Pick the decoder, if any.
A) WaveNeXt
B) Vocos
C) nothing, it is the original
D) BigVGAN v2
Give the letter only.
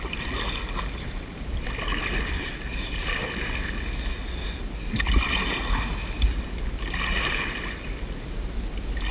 C